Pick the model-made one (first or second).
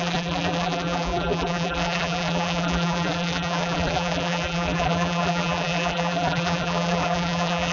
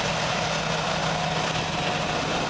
first